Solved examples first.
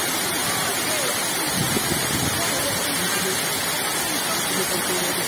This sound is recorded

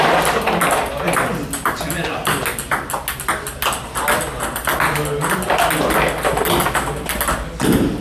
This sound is recorded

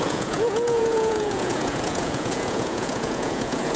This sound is remade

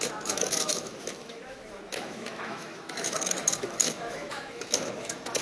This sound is remade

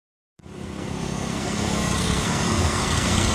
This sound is remade